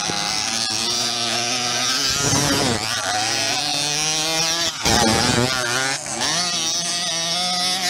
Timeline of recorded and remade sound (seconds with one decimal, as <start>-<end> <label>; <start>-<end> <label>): 0.0-7.9 recorded